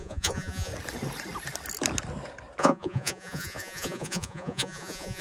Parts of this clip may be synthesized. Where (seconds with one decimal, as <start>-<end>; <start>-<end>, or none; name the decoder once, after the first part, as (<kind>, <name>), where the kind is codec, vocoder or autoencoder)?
0.0-0.7 (vocoder, Vocos); 2.6-5.2